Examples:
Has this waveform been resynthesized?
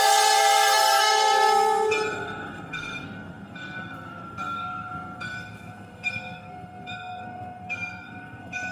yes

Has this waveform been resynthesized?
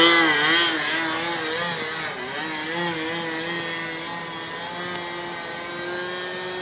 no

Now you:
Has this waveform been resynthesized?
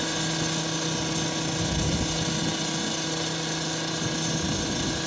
no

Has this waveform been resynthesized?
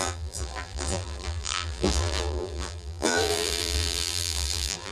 yes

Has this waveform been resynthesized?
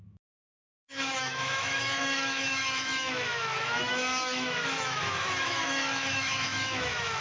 yes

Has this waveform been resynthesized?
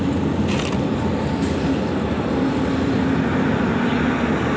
no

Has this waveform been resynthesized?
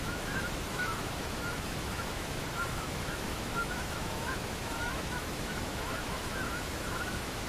yes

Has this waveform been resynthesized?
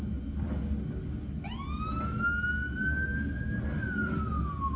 no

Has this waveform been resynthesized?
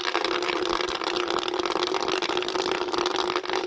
no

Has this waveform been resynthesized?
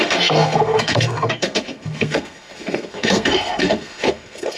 yes